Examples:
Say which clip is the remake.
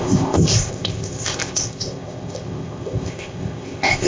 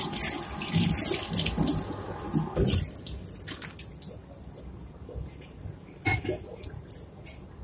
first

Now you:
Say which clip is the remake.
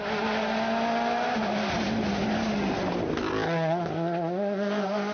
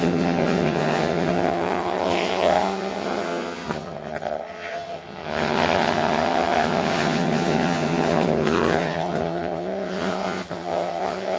second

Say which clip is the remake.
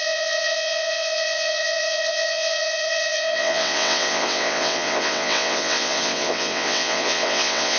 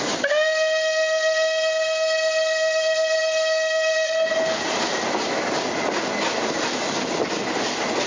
first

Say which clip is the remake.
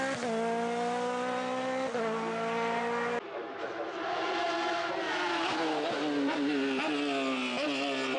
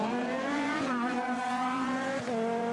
second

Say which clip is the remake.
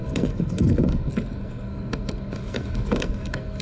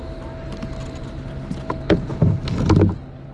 first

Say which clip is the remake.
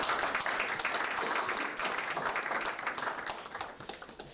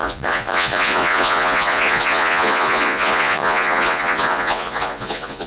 second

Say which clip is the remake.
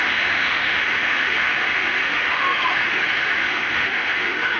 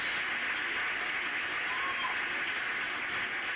first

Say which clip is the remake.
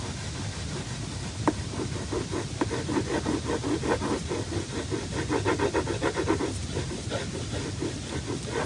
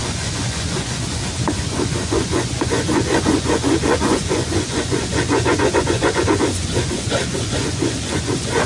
second